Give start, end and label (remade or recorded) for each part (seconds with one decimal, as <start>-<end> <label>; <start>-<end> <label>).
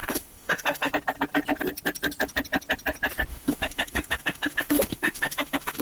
0.0-0.9 remade; 0.9-3.3 recorded; 3.3-5.8 remade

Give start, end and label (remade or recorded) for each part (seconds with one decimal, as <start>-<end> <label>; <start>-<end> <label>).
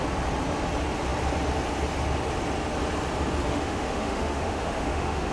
0.0-3.4 recorded; 3.4-5.3 remade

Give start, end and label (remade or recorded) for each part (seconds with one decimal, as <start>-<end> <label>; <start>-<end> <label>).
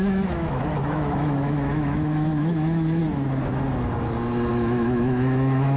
0.0-3.0 remade; 3.0-4.5 recorded; 4.5-5.8 remade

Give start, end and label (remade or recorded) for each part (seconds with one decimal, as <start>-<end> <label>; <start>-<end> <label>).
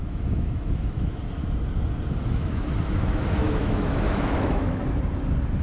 0.0-1.2 remade; 1.2-2.2 recorded; 2.2-4.8 remade; 4.8-5.6 recorded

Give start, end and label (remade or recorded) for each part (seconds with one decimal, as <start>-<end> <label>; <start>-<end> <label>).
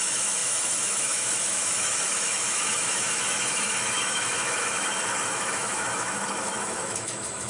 0.0-7.5 remade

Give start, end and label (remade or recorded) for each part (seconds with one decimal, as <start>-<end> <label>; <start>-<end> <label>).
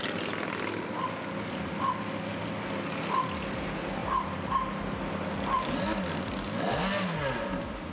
0.0-7.9 recorded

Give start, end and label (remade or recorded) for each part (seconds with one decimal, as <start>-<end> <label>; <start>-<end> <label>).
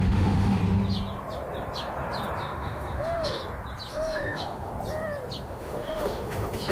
0.0-0.6 remade; 0.6-2.4 recorded; 2.4-3.4 remade; 3.4-3.9 recorded; 3.9-4.7 remade; 4.7-5.4 recorded; 5.4-6.7 remade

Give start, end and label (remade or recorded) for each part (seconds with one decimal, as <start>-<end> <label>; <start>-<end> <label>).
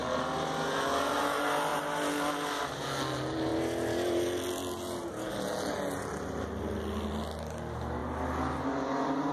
0.0-9.3 recorded